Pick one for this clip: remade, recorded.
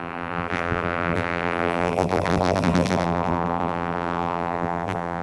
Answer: remade